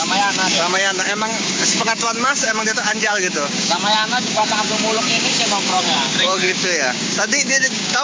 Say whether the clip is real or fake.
fake